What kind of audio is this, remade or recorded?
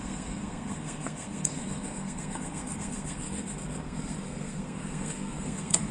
remade